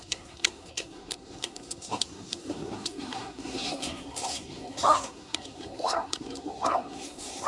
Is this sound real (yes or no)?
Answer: no